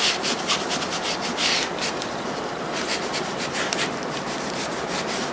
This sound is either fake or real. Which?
fake